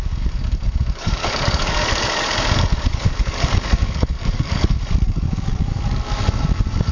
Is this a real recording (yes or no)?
no